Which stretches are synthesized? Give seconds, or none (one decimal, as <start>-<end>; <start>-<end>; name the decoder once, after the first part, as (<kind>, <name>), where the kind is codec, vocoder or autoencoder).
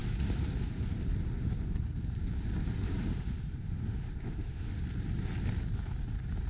3.1-4.8 (autoencoder, DAC-VAE)